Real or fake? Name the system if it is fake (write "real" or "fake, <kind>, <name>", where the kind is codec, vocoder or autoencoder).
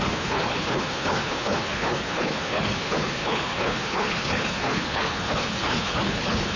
fake, codec, HILCodec